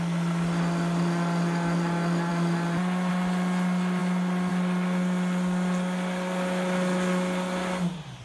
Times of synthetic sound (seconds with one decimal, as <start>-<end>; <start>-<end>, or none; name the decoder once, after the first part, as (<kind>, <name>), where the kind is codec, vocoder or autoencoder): none